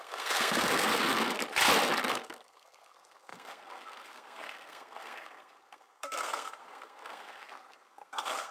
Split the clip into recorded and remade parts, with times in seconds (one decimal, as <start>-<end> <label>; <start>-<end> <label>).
0.0-1.4 remade; 1.4-2.1 recorded; 2.1-8.5 remade

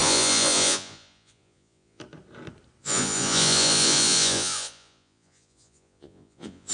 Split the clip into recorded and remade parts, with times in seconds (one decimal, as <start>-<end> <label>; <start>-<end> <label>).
0.0-2.0 remade; 2.0-2.8 recorded; 2.8-6.7 remade

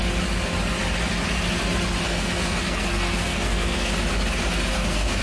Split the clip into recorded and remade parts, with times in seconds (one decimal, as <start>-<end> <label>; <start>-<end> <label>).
0.0-2.0 recorded; 2.0-3.9 remade; 3.9-4.7 recorded; 4.7-5.2 remade

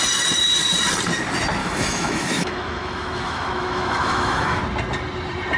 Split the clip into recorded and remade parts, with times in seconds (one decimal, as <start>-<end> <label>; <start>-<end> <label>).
0.0-1.6 recorded; 1.6-4.6 remade; 4.6-5.6 recorded

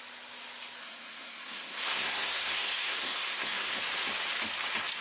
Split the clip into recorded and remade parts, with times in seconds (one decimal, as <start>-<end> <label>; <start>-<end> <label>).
0.0-0.8 recorded; 0.8-3.8 remade; 3.8-5.0 recorded